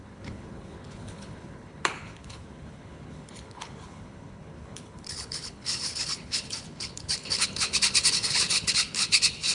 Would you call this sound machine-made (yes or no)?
yes